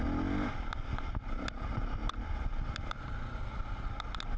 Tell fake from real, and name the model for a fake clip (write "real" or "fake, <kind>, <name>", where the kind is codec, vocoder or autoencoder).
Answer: real